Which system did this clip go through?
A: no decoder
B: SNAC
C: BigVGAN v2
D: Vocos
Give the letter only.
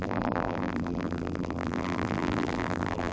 C